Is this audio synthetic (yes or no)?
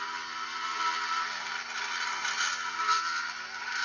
no